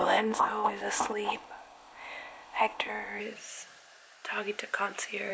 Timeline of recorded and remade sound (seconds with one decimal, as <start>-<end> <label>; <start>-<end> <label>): 0.0-3.2 remade; 3.2-5.3 recorded